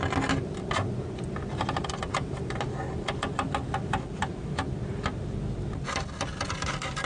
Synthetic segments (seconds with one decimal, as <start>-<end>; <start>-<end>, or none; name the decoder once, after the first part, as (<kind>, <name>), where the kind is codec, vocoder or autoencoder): none